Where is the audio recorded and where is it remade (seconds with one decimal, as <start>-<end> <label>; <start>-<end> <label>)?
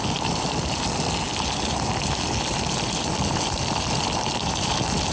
0.0-5.1 recorded